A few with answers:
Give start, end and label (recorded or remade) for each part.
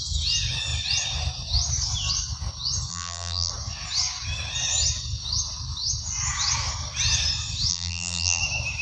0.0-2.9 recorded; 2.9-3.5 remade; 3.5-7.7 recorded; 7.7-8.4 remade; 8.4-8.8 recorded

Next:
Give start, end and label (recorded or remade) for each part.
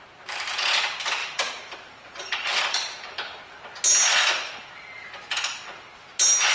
0.0-1.2 recorded; 1.2-3.4 remade; 3.4-4.1 recorded; 4.1-4.7 remade; 4.7-6.5 recorded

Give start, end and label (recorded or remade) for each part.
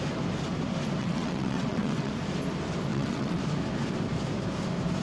0.0-1.0 recorded; 1.0-2.1 remade; 2.1-2.9 recorded; 2.9-3.4 remade; 3.4-5.0 recorded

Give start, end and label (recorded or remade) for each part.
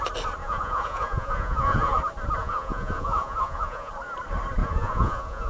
0.0-0.4 recorded; 0.4-2.0 remade; 2.0-2.4 recorded; 2.4-3.9 remade; 3.9-4.6 recorded; 4.6-5.5 remade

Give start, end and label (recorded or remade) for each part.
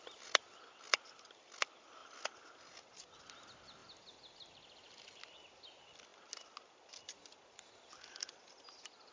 0.0-9.1 recorded